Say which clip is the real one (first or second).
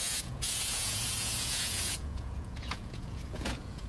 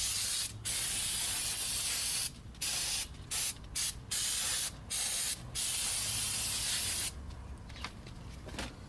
second